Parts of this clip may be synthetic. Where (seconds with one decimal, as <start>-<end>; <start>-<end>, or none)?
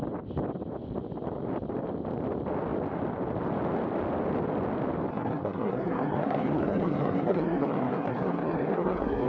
5.1-9.3